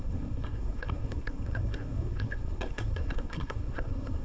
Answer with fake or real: fake